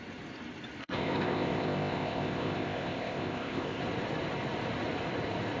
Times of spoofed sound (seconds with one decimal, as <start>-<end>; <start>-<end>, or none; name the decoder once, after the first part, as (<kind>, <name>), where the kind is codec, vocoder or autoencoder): 0.8-3.8 (codec, ZipCodec)